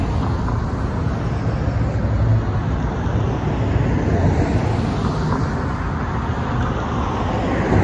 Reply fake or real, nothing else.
real